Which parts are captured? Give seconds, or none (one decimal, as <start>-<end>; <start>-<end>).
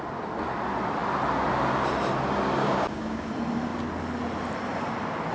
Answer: 0.0-2.6; 3.3-5.3